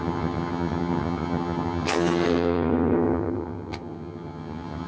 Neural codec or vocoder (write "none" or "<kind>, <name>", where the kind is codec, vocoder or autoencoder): vocoder, HiFi-GAN